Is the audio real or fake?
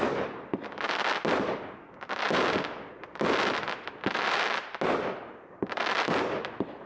real